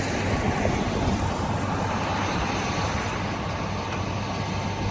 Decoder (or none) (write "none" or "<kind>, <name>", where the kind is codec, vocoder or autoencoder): none